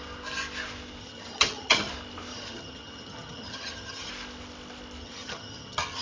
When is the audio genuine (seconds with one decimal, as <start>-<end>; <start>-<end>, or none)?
0.0-1.0; 1.9-2.3; 4.1-5.0